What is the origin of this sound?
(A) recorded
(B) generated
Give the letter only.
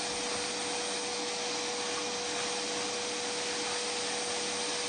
A